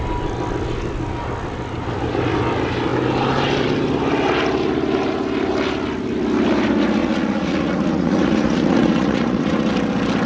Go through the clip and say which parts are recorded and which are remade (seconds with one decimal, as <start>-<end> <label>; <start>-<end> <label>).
0.0-7.0 recorded; 7.0-9.7 remade; 9.7-10.3 recorded